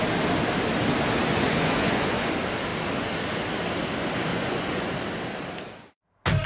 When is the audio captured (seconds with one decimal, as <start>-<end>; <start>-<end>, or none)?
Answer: 0.0-1.3; 2.3-4.3; 4.9-6.5